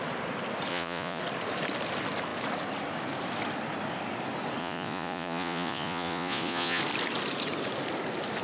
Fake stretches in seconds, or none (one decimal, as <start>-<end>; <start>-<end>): 0.7-1.2; 4.6-6.8